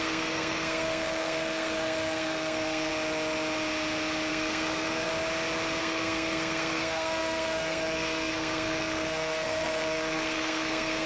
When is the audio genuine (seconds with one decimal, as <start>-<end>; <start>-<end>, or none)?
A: 2.9-4.3; 5.1-5.8